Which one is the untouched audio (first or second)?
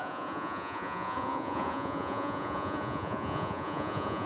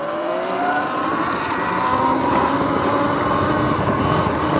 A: second